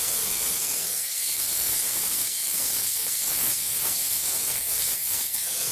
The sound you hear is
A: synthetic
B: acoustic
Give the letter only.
A